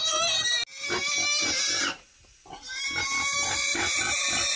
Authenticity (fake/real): real